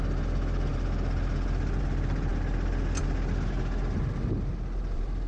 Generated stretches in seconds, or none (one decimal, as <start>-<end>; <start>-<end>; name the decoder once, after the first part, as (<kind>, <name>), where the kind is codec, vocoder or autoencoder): none